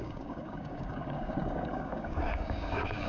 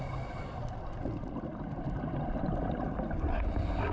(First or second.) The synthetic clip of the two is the first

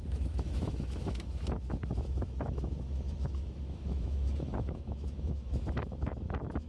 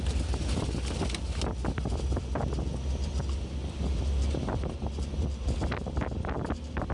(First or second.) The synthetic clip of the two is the first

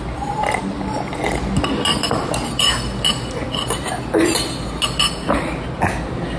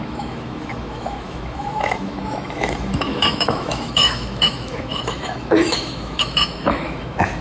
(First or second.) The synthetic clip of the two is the second